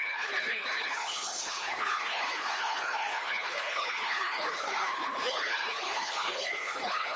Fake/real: fake